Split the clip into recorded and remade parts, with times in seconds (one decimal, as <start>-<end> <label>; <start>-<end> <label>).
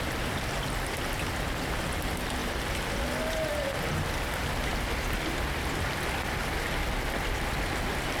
0.0-8.2 recorded